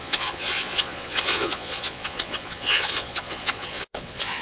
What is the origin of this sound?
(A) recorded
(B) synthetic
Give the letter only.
B